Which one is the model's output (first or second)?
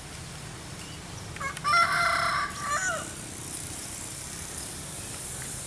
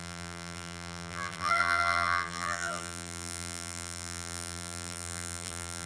second